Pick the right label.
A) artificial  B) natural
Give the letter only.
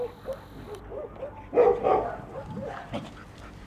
B